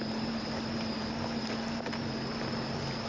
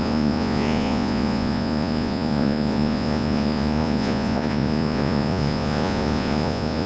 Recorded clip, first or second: first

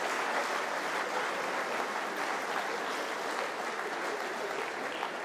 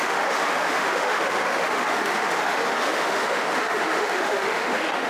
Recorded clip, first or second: first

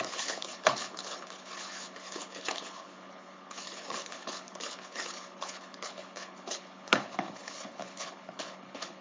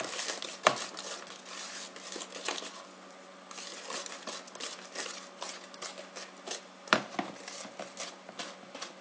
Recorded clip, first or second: second